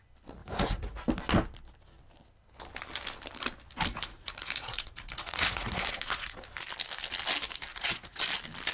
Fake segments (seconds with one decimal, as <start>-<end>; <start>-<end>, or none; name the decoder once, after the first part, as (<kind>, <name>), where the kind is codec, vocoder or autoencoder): 0.4-1.0 (vocoder, Vocos); 3.9-6.4; 7.7-8.2